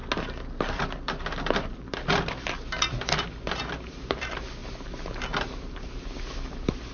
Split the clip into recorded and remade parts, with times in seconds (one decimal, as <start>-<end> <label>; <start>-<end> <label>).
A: 0.0-0.7 recorded; 0.7-4.6 remade; 4.6-5.7 recorded; 5.7-6.9 remade